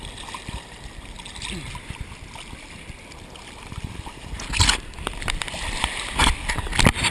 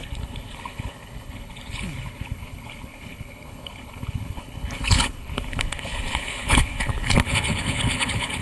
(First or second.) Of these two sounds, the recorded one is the first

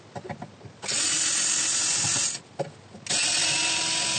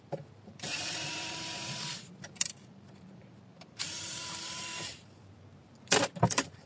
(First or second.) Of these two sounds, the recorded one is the first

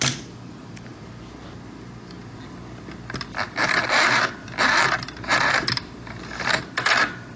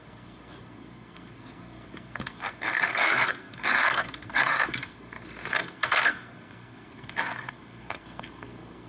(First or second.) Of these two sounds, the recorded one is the first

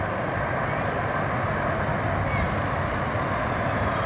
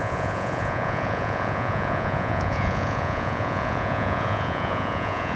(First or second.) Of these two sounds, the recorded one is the first